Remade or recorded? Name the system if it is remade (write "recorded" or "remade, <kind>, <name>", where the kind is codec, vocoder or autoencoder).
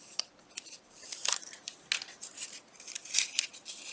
recorded